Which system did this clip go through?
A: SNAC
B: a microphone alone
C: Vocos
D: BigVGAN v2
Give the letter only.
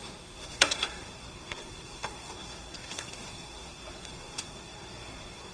A